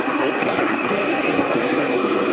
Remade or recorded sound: remade